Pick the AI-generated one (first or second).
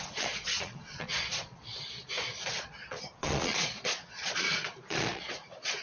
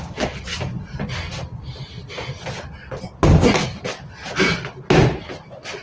first